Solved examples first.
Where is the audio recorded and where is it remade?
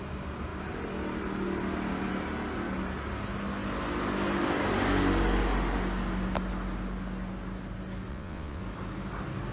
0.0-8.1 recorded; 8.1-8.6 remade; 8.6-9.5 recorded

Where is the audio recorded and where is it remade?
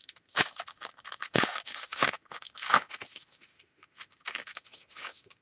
0.0-5.4 remade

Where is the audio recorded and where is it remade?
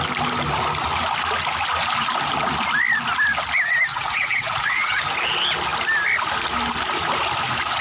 0.0-3.9 recorded; 3.9-5.0 remade; 5.0-7.8 recorded